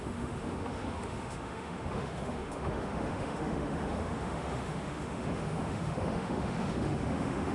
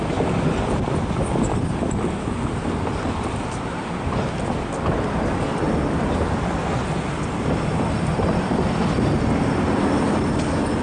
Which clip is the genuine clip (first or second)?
second